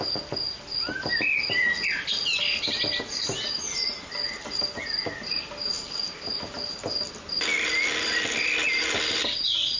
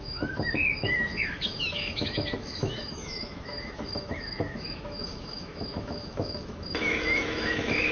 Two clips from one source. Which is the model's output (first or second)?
second